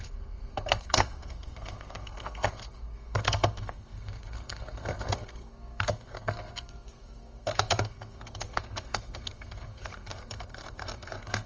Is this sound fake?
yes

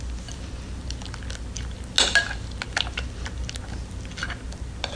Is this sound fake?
no